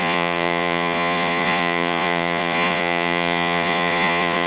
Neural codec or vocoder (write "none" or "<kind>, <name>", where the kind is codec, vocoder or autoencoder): vocoder, Vocos